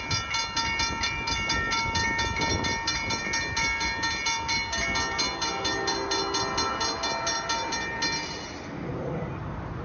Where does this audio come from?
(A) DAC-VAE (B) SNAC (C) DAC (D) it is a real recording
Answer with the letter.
D